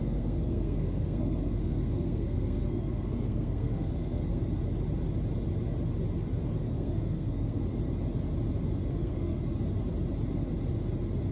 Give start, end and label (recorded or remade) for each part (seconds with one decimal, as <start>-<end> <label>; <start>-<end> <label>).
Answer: 0.0-4.4 remade; 4.4-6.5 recorded; 6.5-7.6 remade; 7.6-8.8 recorded; 8.8-9.4 remade; 9.4-11.3 recorded